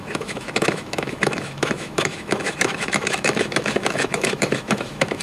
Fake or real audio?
fake